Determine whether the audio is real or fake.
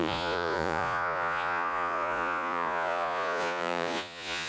fake